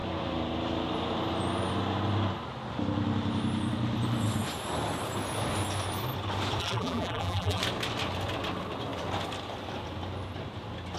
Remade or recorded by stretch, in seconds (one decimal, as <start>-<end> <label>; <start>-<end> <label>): 0.0-6.6 recorded; 6.6-7.6 remade; 7.6-11.0 recorded